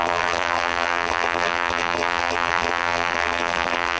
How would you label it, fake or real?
fake